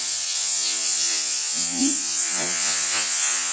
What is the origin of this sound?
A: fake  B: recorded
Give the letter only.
A